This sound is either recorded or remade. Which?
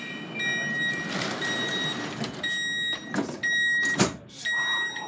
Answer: recorded